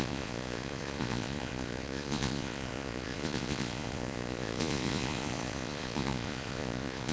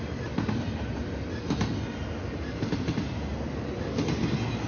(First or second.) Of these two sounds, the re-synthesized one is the first